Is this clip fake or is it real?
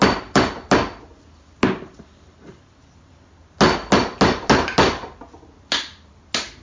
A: real